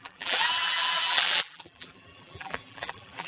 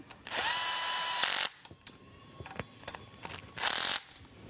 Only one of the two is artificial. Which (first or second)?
first